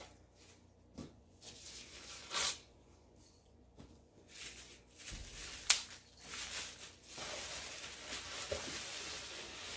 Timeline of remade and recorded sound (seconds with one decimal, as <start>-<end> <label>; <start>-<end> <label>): 0.0-1.0 recorded; 1.0-4.8 remade; 4.8-8.9 recorded; 8.9-9.8 remade